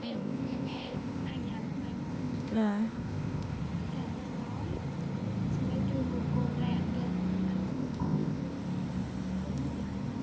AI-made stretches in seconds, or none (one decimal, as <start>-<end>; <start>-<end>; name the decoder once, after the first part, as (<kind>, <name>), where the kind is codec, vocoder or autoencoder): 0.0-1.3 (codec, ZipCodec); 2.1-3.6; 7.7-8.4